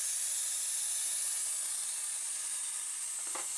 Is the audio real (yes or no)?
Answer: yes